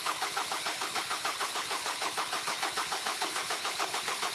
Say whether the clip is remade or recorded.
remade